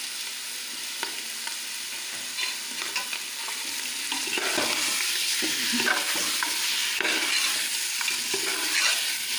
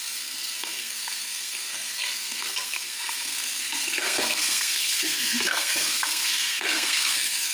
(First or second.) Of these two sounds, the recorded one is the first